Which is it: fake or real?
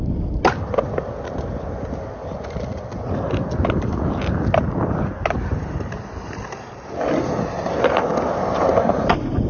real